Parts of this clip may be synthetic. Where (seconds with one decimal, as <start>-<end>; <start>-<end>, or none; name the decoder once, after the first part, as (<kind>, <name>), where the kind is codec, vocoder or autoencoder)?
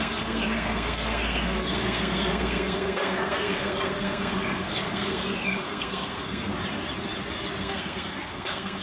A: 0.0-6.5 (codec, SNAC); 7.6-8.8